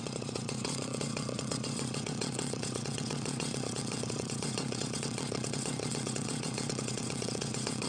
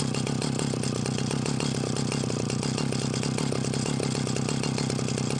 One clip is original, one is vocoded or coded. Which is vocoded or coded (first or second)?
first